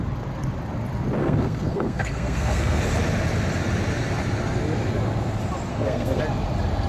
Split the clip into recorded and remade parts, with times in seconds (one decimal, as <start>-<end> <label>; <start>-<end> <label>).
0.0-1.2 recorded; 1.2-2.8 remade; 2.8-5.7 recorded; 5.7-6.2 remade; 6.2-6.9 recorded

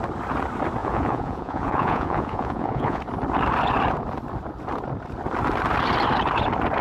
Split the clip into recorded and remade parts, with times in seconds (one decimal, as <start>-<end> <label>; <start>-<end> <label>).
0.0-0.8 recorded; 0.8-3.0 remade; 3.0-6.8 recorded

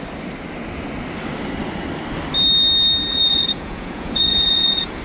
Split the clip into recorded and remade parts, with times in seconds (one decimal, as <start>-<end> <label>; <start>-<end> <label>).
0.0-3.1 recorded; 3.1-5.0 remade

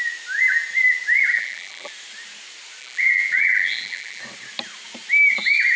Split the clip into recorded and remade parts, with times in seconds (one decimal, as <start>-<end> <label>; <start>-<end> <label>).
0.0-1.3 recorded; 1.3-1.9 remade; 1.9-2.8 recorded; 2.8-4.2 remade; 4.2-5.8 recorded

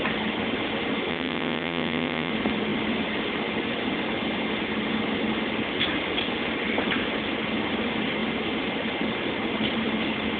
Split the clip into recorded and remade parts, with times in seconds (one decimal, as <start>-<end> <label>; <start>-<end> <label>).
0.0-1.1 recorded; 1.1-2.3 remade; 2.3-10.4 recorded

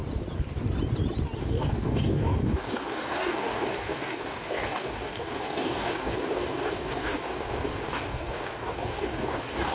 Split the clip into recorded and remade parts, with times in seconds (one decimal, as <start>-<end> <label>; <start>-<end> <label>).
0.0-1.4 recorded; 1.4-9.7 remade